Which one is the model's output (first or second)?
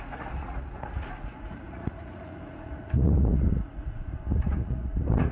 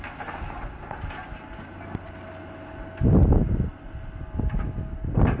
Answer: first